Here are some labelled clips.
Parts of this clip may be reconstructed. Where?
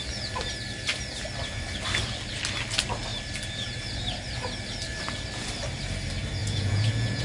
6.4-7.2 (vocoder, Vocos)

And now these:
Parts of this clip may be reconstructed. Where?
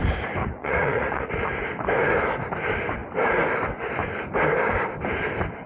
0.4-1.3 (vocoder, Vocos)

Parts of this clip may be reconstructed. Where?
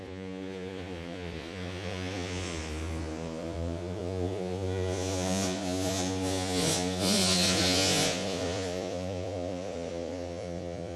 0.0-11.0 (vocoder, Vocos)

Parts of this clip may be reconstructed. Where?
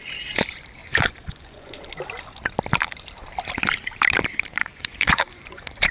0.8-1.8 (vocoder, Vocos); 4.6-5.9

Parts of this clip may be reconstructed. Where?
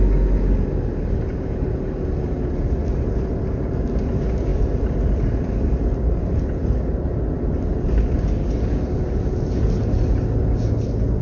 none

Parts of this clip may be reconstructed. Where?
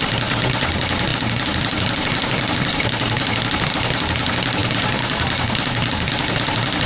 none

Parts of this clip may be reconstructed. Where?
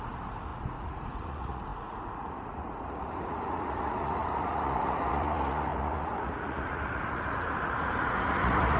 0.0-8.8 (vocoder, Vocos)